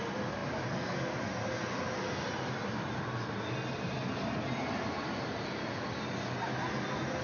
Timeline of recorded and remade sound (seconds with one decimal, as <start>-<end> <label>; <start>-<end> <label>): 0.0-7.2 recorded